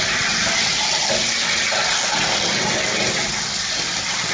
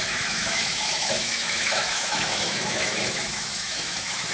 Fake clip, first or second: second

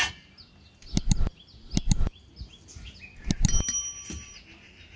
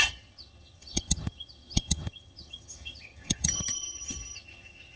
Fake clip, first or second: second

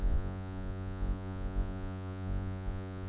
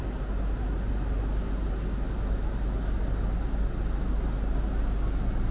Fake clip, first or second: first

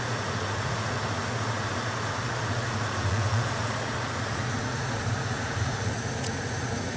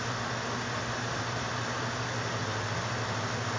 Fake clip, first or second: first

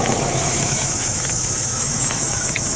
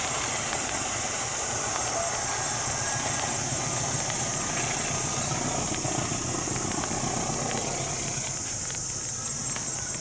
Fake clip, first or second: first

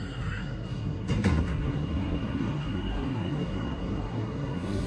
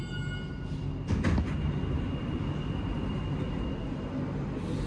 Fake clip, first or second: first